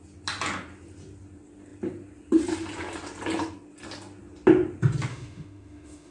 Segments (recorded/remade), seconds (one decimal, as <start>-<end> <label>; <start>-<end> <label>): 0.0-5.1 recorded; 5.1-6.1 remade